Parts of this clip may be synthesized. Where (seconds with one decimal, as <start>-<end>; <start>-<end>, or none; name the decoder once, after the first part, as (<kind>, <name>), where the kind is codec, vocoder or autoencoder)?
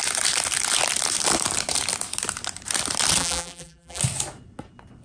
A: 3.2-4.0 (vocoder, BigVGAN v2)